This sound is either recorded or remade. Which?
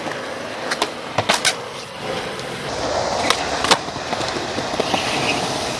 recorded